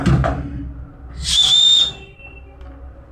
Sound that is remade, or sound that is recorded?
recorded